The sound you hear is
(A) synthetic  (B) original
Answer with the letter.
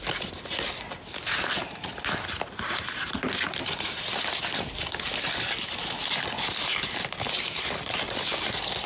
B